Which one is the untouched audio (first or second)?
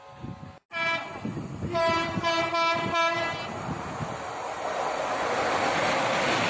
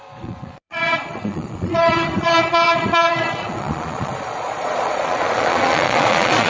first